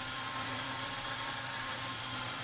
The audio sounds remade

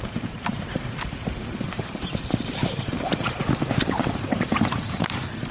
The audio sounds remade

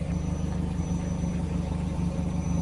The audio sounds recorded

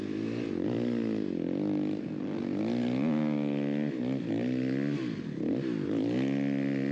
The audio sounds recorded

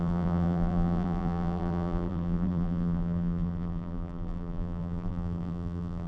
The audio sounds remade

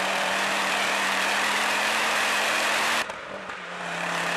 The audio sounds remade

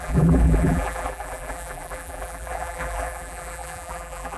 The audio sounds remade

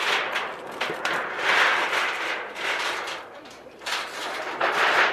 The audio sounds remade